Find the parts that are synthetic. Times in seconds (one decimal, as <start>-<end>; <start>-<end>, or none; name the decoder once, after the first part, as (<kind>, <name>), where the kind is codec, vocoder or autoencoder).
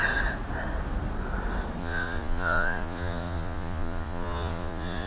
1.8-5.1 (vocoder, Vocos)